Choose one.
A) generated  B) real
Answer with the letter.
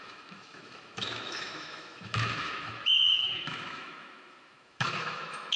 A